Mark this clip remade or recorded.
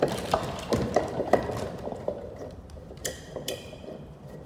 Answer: remade